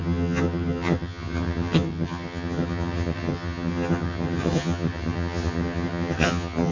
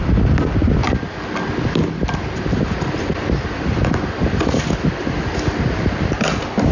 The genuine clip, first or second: second